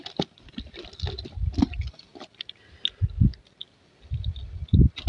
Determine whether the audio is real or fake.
real